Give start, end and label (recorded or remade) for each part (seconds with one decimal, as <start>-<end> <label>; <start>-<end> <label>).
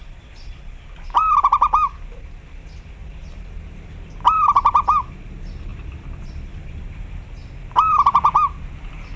0.0-1.4 remade; 1.4-3.0 recorded; 3.0-3.5 remade; 3.5-5.7 recorded; 5.7-7.0 remade; 7.0-9.2 recorded